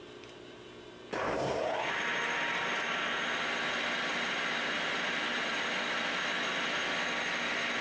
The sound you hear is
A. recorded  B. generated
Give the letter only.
A